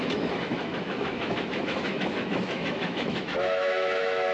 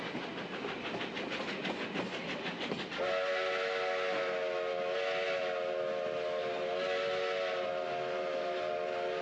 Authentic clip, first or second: second